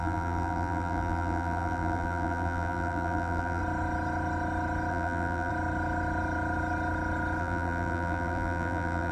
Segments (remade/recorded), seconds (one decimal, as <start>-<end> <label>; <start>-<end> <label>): 0.0-3.6 remade; 3.6-4.9 recorded; 4.9-5.5 remade; 5.5-7.4 recorded; 7.4-9.1 remade